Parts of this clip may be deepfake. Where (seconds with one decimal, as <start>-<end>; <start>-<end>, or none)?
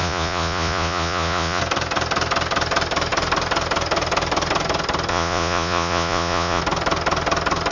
0.0-1.6; 5.1-6.6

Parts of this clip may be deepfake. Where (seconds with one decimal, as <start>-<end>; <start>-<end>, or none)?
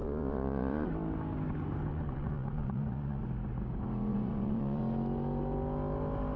0.0-0.9; 1.9-3.2; 4.1-4.8